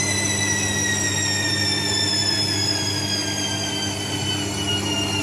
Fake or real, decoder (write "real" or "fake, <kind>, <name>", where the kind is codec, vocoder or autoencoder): real